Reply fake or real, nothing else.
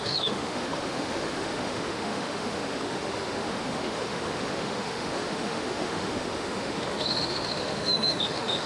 fake